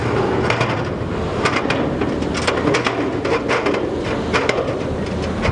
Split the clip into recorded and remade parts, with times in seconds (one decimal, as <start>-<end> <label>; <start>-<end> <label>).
0.0-5.5 recorded